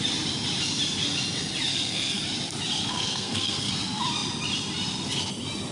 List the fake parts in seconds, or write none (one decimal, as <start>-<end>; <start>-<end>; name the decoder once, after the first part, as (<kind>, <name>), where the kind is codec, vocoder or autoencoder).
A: 1.7-2.2 (codec, SNAC); 2.8-3.7